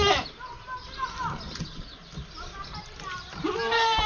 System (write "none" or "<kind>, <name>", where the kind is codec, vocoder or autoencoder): none